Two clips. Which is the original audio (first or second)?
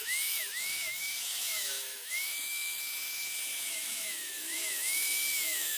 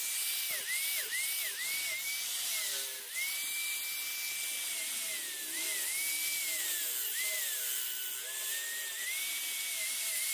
second